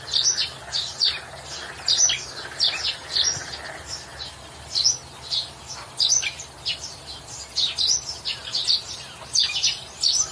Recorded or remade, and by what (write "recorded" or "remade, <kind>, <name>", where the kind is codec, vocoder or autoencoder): recorded